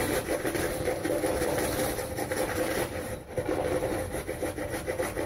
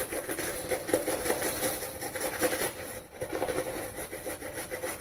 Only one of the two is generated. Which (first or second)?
second